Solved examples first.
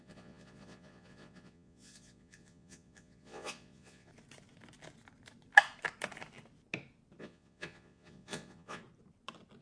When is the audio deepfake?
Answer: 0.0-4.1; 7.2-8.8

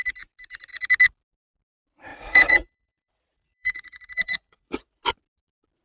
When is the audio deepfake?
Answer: 2.1-5.0

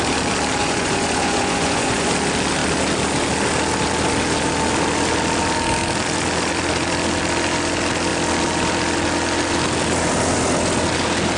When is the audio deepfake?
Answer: 0.6-2.1

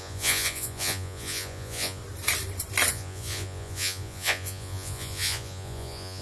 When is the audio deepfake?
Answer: 0.0-2.0; 2.9-6.2

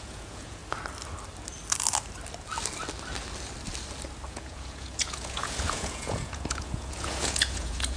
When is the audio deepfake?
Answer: 0.0-0.6; 4.3-8.0

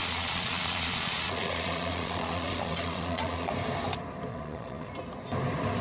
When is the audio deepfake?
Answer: 0.0-3.5; 4.3-4.9

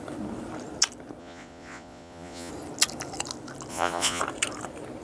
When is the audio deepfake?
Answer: 1.2-2.5; 3.7-4.2

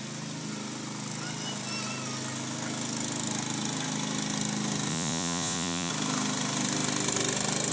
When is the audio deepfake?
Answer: 4.9-5.9